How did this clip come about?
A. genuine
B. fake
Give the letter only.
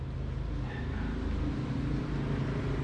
A